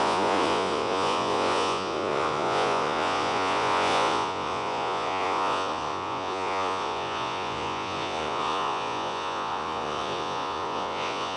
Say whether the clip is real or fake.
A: fake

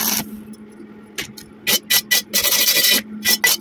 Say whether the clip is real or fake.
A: real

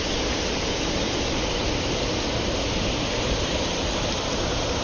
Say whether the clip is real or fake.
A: real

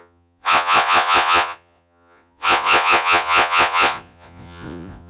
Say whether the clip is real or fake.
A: fake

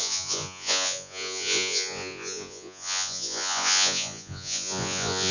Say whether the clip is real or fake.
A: fake